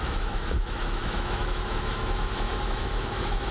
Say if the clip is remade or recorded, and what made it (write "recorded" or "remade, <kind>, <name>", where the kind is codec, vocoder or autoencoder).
remade, autoencoder, DAC-VAE